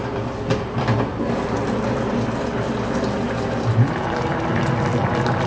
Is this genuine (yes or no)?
yes